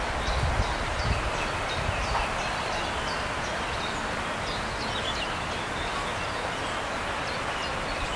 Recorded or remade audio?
recorded